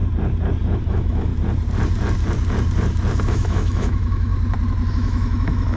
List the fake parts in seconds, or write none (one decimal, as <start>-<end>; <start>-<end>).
0.8-1.3; 3.3-4.3; 4.9-5.8